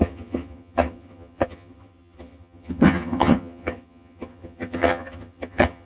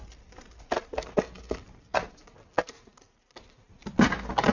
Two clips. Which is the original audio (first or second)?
second